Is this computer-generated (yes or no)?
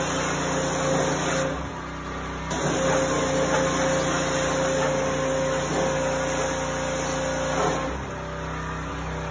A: no